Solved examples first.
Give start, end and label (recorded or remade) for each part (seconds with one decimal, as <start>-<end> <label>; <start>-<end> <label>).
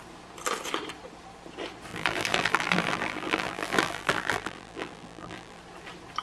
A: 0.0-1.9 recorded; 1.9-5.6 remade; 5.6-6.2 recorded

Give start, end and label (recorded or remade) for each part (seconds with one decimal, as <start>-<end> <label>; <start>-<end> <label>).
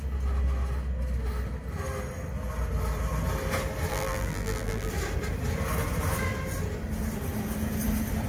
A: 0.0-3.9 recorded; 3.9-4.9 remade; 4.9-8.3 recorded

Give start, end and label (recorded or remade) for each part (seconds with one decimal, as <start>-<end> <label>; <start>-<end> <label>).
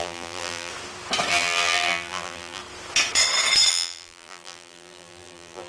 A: 0.0-0.7 remade; 0.7-1.3 recorded; 1.3-2.6 remade; 2.6-3.7 recorded; 3.7-5.7 remade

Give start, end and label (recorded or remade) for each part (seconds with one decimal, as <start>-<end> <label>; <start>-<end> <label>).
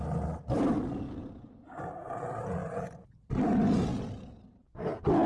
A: 0.0-1.2 recorded; 1.2-2.0 remade; 2.0-2.6 recorded; 2.6-3.2 remade; 3.2-5.3 recorded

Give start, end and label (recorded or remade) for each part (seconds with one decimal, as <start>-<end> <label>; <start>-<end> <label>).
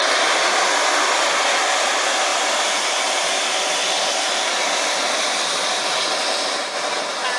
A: 0.0-3.8 recorded; 3.8-5.5 remade; 5.5-7.4 recorded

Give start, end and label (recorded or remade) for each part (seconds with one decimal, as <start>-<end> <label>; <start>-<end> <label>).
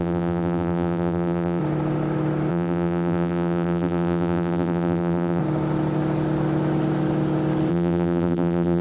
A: 0.0-1.6 remade; 1.6-2.5 recorded; 2.5-5.4 remade; 5.4-7.7 recorded; 7.7-8.8 remade